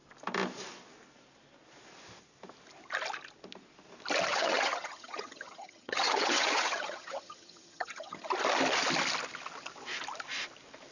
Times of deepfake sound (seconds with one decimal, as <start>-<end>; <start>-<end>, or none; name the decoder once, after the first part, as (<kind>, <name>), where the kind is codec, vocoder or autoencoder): 4.3-8.3 (vocoder, HiFi-GAN)